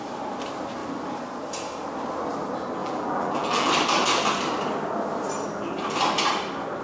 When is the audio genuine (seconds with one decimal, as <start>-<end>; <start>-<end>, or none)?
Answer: 0.0-2.8; 3.7-6.8